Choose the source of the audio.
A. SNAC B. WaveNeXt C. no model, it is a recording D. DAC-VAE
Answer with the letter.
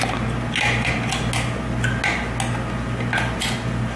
C